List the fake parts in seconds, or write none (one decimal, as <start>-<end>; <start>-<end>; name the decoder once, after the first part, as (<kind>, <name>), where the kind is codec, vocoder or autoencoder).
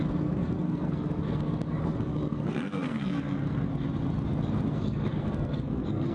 0.0-3.7 (codec, SNAC); 4.7-6.1